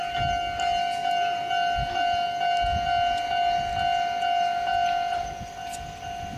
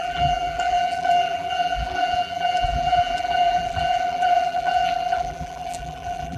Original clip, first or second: first